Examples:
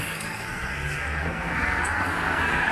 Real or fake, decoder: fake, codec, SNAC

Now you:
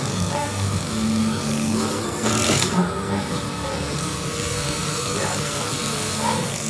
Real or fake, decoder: fake, codec, SNAC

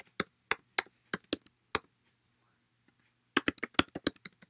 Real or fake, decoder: real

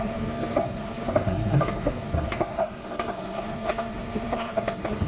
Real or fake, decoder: fake, codec, SNAC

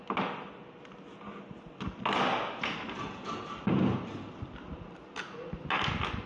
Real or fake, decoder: real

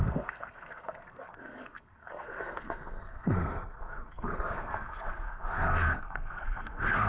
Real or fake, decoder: fake, codec, SNAC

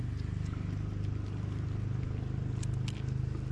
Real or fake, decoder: real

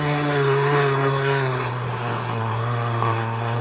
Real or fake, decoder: fake, codec, SNAC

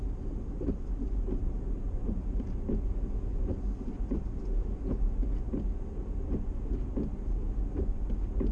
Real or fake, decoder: real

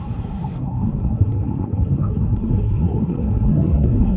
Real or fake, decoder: fake, codec, SNAC